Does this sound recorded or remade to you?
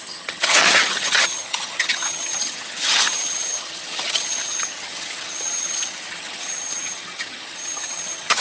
remade